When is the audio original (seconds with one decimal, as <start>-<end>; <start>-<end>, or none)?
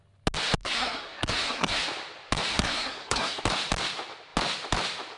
0.0-0.6; 1.8-2.5; 3.4-5.2